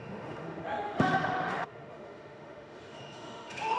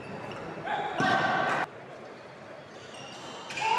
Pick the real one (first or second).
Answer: second